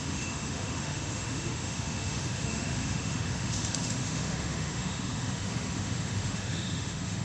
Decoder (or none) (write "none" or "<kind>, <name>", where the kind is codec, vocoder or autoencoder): autoencoder, DAC-VAE